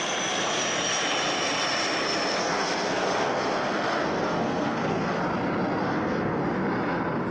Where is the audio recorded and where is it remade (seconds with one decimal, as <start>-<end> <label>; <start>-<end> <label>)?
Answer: 0.0-2.4 recorded; 2.4-5.2 remade; 5.2-5.8 recorded; 5.8-6.4 remade; 6.4-7.3 recorded